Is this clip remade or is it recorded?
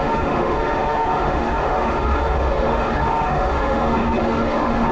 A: remade